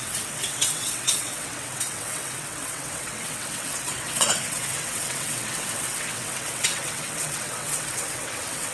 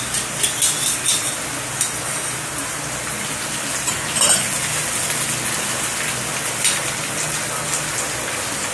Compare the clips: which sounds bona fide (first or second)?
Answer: second